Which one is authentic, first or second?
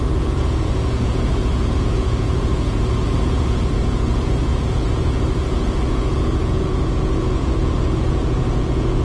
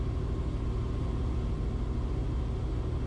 second